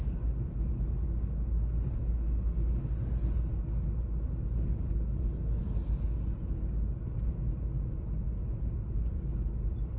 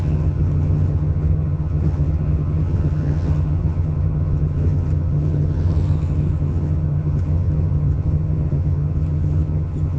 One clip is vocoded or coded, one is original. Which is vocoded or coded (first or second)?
second